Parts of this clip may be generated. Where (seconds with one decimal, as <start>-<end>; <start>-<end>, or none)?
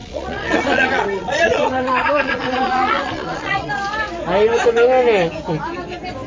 0.0-3.7